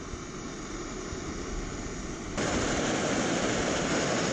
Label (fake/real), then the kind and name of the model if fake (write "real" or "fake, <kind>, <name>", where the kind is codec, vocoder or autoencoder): real